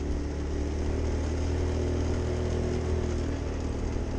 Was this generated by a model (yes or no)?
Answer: no